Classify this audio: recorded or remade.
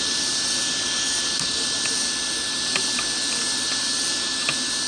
recorded